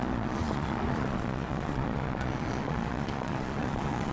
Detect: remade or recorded remade